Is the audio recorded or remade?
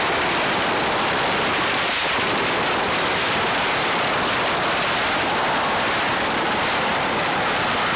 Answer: remade